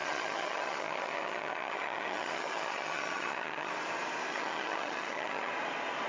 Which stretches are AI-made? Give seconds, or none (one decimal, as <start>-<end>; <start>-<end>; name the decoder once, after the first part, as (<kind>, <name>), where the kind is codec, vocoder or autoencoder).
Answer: 0.0-3.7 (vocoder, HiFi-GAN); 4.3-5.5